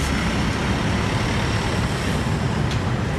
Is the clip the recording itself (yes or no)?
yes